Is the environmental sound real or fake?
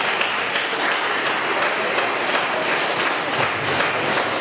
real